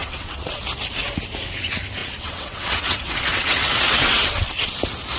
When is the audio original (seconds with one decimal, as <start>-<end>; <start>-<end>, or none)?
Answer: 0.6-2.0; 4.8-5.2